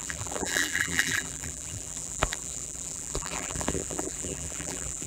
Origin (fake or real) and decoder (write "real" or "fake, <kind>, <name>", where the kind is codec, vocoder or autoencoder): fake, vocoder, BigVGAN v2